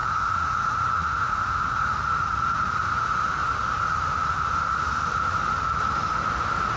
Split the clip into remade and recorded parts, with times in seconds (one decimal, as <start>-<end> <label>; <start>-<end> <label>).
0.0-3.4 remade; 3.4-6.8 recorded